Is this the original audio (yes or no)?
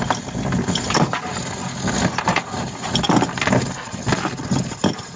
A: yes